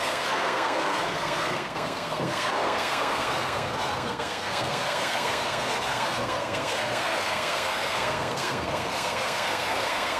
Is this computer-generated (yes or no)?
yes